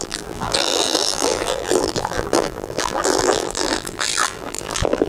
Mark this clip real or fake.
fake